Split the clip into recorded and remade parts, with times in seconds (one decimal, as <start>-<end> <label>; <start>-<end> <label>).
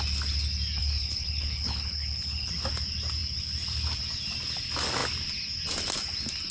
0.0-0.8 recorded; 0.8-2.5 remade; 2.5-6.5 recorded